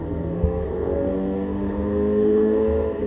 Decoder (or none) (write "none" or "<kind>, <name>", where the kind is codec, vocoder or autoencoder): codec, SNAC